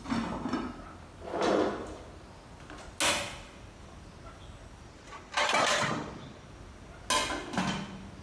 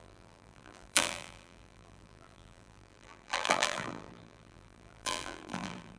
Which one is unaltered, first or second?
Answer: first